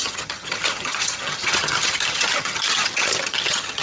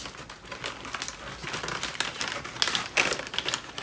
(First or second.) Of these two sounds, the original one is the second